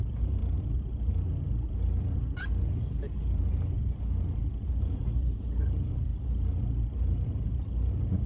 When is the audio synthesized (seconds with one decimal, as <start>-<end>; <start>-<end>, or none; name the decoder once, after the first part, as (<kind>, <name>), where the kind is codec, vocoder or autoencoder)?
0.0-0.4 (vocoder, BigVGAN v2); 4.8-6.1; 7.0-8.3